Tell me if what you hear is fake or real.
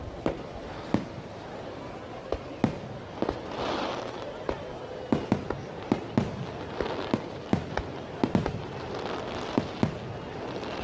real